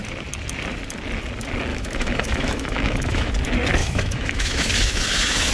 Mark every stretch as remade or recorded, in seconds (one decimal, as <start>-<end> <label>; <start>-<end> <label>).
0.0-1.7 recorded; 1.7-3.3 remade; 3.3-3.8 recorded; 3.8-5.5 remade